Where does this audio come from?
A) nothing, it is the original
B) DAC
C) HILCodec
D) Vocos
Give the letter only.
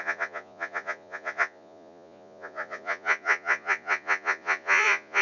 D